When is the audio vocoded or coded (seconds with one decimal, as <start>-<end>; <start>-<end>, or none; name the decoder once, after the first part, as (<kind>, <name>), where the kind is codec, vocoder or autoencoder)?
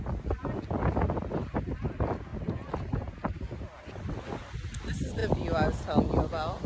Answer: none